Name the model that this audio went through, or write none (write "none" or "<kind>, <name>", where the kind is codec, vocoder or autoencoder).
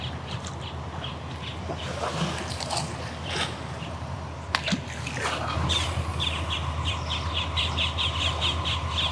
none